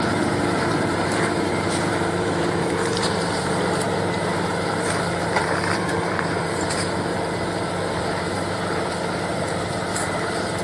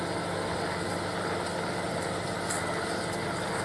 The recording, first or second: second